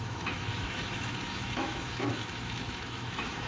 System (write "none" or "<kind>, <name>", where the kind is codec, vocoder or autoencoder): autoencoder, DAC-VAE